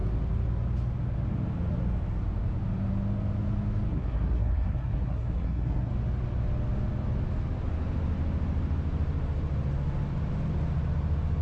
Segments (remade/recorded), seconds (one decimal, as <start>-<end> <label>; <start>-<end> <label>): 0.0-3.9 recorded; 3.9-5.9 remade; 5.9-11.4 recorded